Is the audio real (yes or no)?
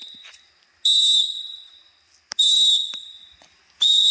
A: yes